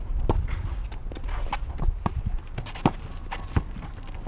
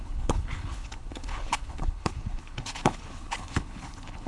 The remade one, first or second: second